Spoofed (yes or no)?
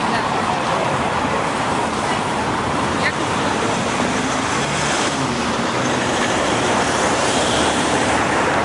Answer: yes